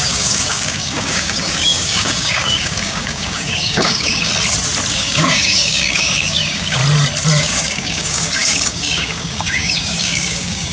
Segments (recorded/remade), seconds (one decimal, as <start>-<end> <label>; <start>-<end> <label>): 0.0-4.3 remade; 4.3-4.9 recorded; 4.9-6.8 remade; 6.8-7.4 recorded; 7.4-10.7 remade